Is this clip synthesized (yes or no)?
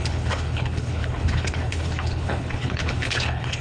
yes